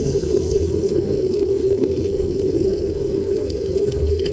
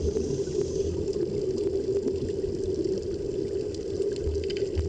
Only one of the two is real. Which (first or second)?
second